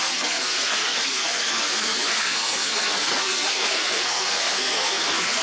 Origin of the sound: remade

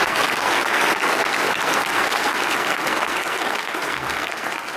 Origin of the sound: remade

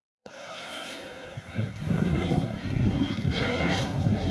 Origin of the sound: remade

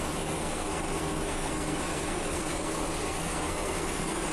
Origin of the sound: remade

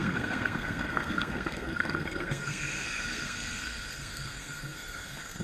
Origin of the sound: remade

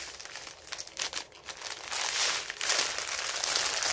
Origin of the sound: recorded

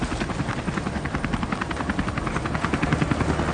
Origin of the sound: recorded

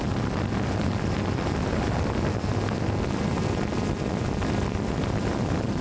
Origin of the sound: recorded